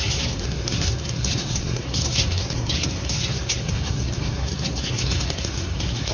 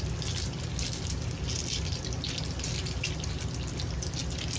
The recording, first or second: second